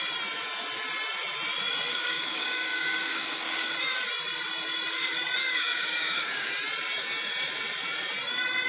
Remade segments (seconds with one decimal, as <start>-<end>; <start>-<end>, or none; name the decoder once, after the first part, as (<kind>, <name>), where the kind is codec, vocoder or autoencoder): 1.9-3.7 (codec, DAC); 5.4-6.5